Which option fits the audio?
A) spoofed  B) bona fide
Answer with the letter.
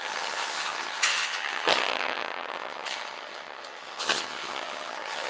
A